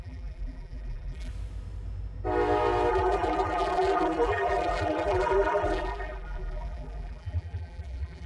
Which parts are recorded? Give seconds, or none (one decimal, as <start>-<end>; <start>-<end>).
1.3-2.9